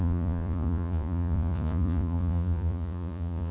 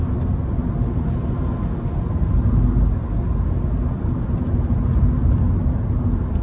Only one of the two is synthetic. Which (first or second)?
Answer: first